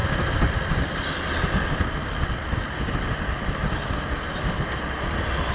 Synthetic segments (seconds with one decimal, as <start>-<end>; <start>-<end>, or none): none